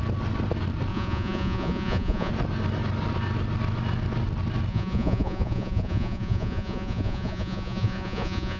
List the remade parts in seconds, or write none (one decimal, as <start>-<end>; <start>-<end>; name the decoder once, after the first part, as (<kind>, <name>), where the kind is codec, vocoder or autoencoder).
0.9-2.3 (vocoder, Vocos); 4.7-8.6